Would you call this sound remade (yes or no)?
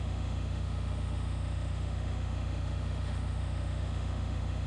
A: yes